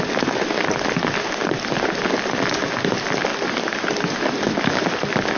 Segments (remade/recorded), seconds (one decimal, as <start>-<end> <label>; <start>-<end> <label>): 0.0-1.4 recorded; 1.4-2.6 remade; 2.6-3.3 recorded; 3.3-3.8 remade; 3.8-5.4 recorded